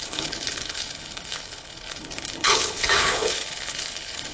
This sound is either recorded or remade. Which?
remade